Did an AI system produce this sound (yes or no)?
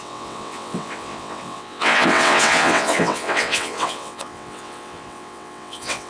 yes